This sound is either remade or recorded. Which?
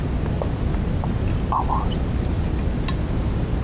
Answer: recorded